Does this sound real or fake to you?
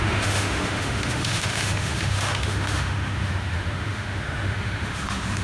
fake